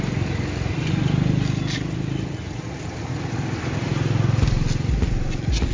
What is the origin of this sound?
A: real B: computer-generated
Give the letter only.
A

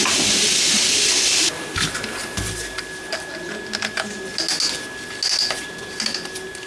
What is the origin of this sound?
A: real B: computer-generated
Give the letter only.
A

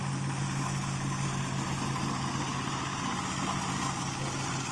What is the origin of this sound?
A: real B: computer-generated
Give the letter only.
A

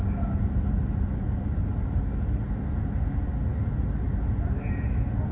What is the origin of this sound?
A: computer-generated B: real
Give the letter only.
B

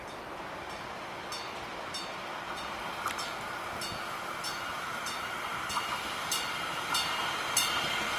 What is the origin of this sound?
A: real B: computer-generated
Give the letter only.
A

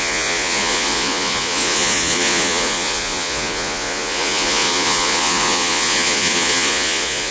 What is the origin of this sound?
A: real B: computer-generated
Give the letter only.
B